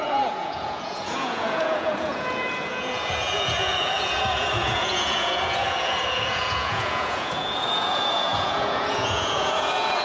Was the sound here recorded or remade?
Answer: remade